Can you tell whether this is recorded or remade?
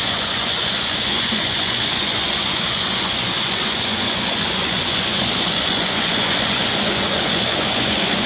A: remade